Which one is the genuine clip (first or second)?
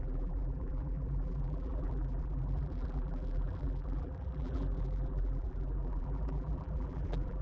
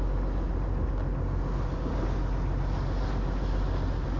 second